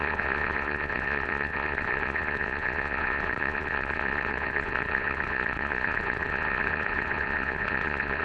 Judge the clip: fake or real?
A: fake